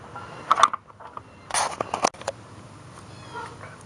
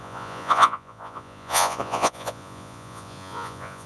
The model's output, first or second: second